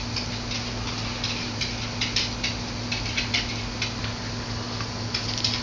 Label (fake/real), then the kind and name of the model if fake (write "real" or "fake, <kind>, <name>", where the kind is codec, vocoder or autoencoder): real